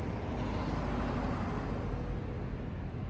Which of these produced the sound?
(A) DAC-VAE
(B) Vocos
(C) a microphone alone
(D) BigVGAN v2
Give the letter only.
C